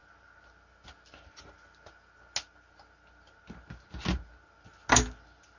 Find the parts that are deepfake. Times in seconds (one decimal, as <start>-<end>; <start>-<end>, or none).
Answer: none